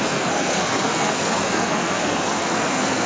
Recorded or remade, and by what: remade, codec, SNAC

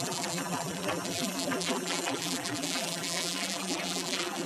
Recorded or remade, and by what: remade, vocoder, BigVGAN v2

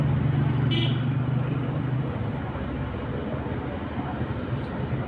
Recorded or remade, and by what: recorded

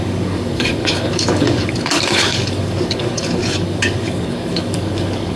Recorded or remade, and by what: remade, codec, DAC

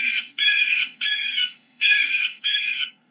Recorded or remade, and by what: remade, codec, SNAC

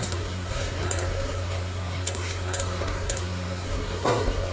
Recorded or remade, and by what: remade, codec, SNAC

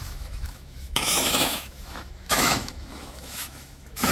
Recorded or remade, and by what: remade, autoencoder, DAC-VAE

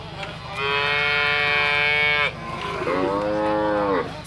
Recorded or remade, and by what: recorded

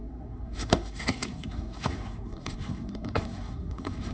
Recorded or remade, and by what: remade, codec, SNAC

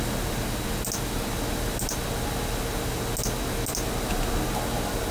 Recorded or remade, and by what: recorded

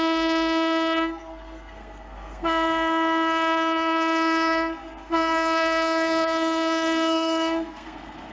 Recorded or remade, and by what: remade, codec, SNAC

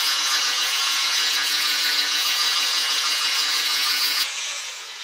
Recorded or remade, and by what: remade, vocoder, Vocos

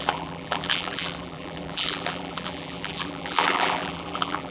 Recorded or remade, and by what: remade, vocoder, BigVGAN v2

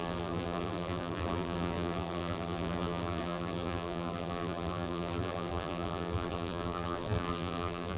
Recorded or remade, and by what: remade, vocoder, BigVGAN v2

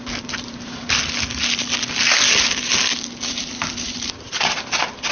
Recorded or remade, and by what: recorded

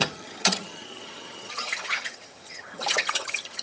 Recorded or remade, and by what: remade, vocoder, HiFi-GAN